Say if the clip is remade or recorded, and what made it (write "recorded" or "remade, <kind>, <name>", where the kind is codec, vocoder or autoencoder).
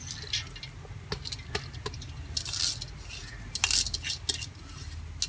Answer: recorded